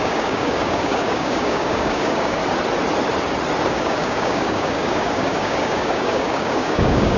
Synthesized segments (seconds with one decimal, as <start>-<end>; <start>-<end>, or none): 0.0-2.4; 3.7-7.2